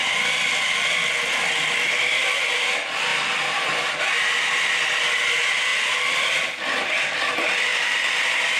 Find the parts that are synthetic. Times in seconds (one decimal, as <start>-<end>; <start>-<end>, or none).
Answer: 0.0-0.9; 3.1-4.0; 5.7-6.2; 7.7-8.6